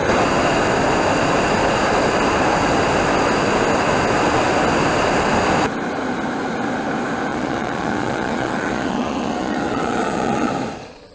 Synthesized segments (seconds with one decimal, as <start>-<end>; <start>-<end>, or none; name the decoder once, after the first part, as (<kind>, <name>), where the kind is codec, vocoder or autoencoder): 7.3-10.5 (vocoder, Vocos)